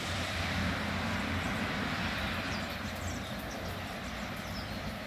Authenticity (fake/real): fake